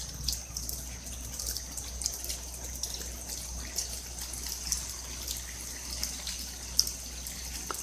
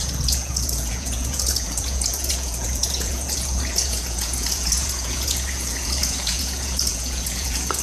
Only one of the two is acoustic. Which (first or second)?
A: first